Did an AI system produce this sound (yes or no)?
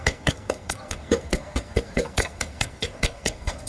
yes